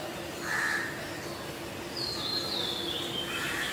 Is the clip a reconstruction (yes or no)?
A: no